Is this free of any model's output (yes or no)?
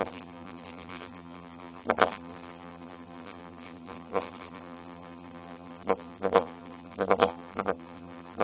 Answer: no